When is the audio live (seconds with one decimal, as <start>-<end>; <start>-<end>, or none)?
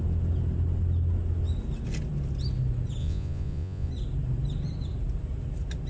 0.0-3.0; 3.9-5.9